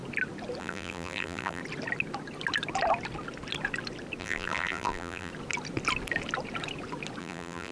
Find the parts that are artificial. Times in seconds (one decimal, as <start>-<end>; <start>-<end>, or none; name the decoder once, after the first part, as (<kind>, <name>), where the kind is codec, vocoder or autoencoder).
0.6-1.6 (vocoder, BigVGAN v2); 4.2-5.3; 7.2-7.7